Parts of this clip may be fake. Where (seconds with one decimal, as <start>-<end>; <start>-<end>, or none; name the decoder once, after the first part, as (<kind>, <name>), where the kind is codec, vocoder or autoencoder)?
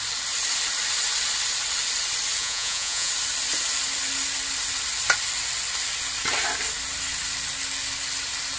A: 2.4-3.1 (vocoder, Vocos)